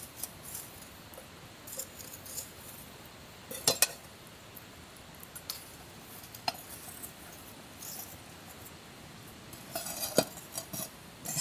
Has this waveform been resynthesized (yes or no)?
no